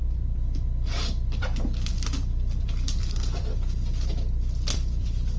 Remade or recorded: recorded